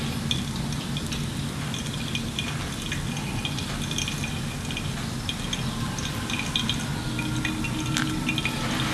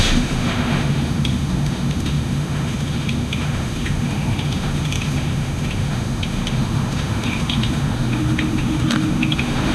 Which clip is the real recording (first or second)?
first